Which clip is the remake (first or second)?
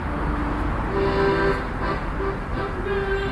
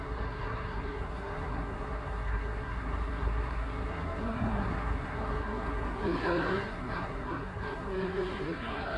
second